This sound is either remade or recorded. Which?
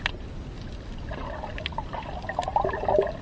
recorded